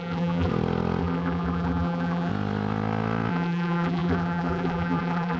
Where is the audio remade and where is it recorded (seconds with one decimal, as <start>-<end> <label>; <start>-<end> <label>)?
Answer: 0.0-0.5 remade; 0.5-1.0 recorded; 1.0-2.3 remade; 2.3-3.3 recorded; 3.3-5.4 remade